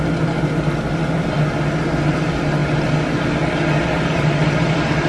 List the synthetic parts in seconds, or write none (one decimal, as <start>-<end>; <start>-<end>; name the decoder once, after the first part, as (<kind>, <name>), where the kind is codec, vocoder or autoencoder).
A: none